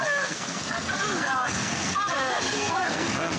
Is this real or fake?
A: fake